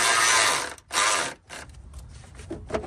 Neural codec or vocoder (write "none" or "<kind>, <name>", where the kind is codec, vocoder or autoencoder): none